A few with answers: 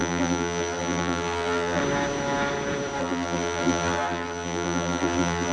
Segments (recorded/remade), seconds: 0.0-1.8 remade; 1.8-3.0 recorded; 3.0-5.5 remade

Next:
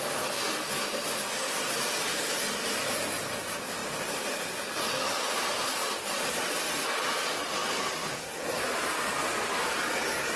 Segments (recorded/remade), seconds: 0.0-2.1 recorded; 2.1-2.8 remade; 2.8-5.8 recorded; 5.8-7.0 remade; 7.0-7.6 recorded; 7.6-9.8 remade; 9.8-10.4 recorded

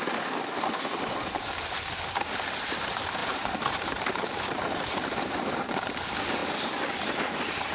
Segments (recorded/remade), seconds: 0.0-3.2 recorded; 3.2-6.0 remade; 6.0-7.7 recorded